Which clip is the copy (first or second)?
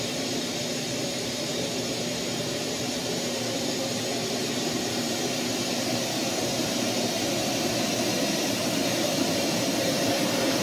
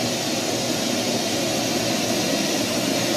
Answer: first